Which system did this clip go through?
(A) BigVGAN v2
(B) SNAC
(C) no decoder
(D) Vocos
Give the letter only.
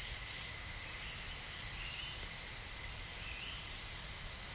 C